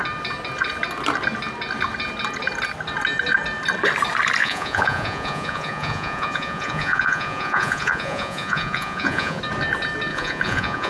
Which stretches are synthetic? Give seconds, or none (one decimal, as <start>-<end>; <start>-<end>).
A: 4.4-9.4; 10.1-10.9